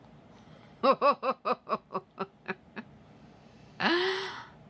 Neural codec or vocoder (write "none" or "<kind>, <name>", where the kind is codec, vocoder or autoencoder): vocoder, BigVGAN v2